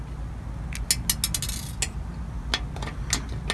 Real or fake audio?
real